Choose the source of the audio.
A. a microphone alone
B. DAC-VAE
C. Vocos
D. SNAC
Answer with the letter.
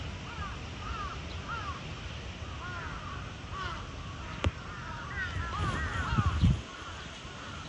A